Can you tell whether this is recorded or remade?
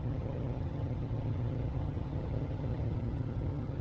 remade